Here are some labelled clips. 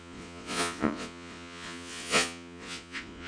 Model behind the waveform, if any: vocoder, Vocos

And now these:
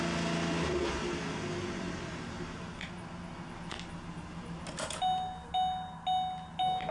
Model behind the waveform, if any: none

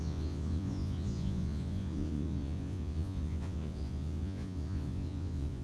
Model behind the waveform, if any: vocoder, Vocos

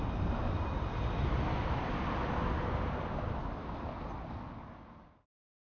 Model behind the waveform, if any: none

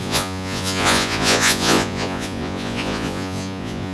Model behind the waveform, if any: vocoder, Vocos